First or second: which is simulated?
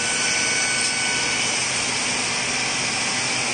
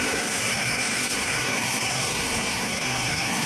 second